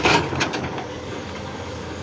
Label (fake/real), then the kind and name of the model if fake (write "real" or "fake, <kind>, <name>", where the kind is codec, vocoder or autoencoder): fake, codec, DAC